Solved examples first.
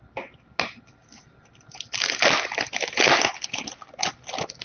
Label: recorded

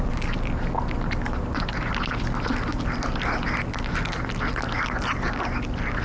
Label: recorded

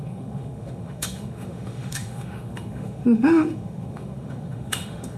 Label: remade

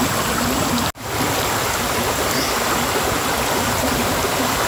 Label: recorded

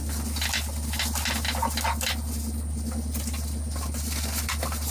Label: recorded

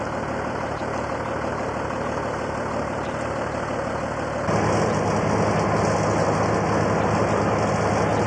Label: recorded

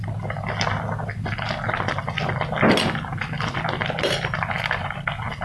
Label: recorded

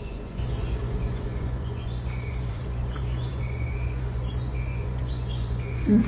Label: remade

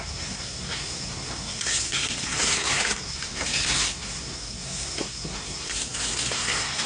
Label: remade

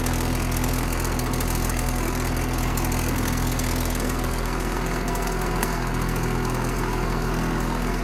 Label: remade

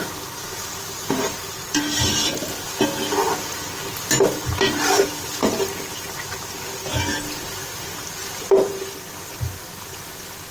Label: recorded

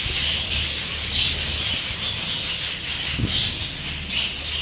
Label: recorded